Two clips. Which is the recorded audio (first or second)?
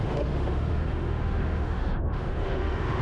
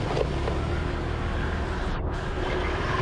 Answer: second